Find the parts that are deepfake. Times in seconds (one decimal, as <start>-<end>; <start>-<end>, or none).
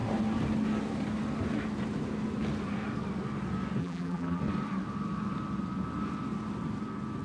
3.8-4.4